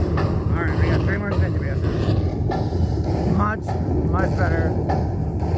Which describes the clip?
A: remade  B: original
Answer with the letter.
B